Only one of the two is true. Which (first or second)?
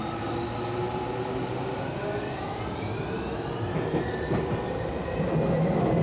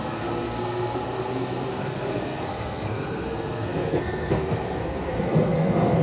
first